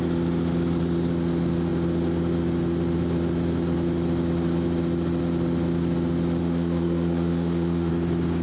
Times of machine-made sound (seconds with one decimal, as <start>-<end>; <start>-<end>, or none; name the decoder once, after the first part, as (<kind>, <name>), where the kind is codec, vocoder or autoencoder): 6.4-7.9 (autoencoder, DAC-VAE)